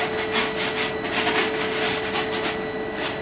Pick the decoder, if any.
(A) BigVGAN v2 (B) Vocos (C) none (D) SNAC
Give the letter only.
C